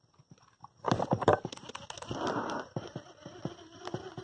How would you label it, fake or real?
real